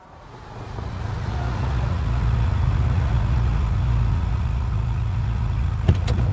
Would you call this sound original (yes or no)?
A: no